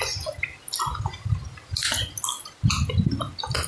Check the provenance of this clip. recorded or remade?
recorded